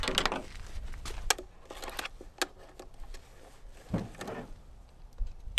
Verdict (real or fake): real